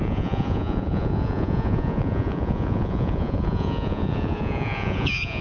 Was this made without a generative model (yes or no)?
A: no